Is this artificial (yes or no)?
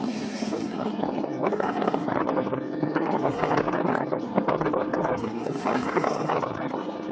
yes